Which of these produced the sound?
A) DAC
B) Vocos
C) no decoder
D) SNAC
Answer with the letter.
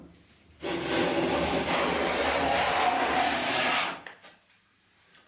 C